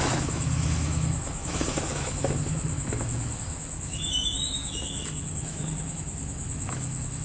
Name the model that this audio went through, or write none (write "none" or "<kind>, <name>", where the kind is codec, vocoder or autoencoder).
autoencoder, DAC-VAE